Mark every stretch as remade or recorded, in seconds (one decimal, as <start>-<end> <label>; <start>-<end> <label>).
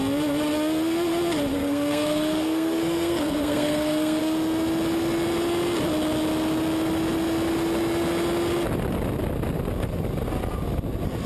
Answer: 0.0-1.5 recorded; 1.5-4.2 remade; 4.2-11.3 recorded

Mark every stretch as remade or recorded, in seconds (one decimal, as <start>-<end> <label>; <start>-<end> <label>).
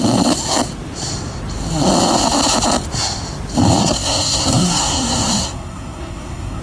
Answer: 0.0-3.8 recorded; 3.8-6.6 remade